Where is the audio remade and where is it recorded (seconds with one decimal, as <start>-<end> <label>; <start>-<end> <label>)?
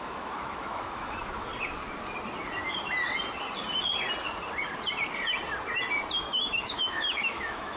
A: 0.0-1.5 remade; 1.5-6.2 recorded; 6.2-7.8 remade